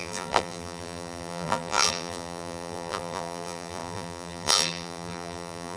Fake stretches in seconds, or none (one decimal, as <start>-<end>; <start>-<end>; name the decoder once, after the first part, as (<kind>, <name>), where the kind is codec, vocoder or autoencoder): 0.0-5.8 (vocoder, BigVGAN v2)